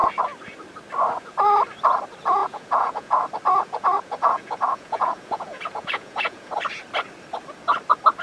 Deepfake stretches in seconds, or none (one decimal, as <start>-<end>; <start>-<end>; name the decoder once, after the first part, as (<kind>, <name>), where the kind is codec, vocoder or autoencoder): 2.4-3.2 (vocoder, Vocos); 3.6-6.5